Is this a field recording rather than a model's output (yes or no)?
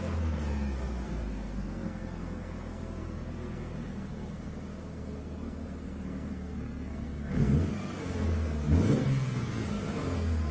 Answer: no